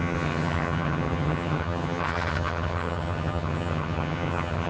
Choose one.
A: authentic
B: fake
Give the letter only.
B